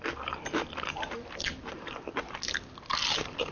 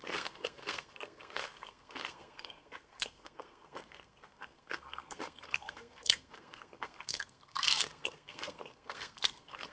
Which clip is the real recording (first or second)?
first